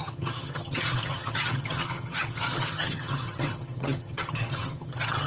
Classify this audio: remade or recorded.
remade